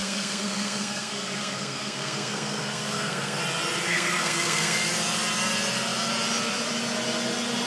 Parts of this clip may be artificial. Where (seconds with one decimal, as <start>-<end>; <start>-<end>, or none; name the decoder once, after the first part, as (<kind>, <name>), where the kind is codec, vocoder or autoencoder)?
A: 0.0-3.4 (codec, SNAC); 3.9-4.9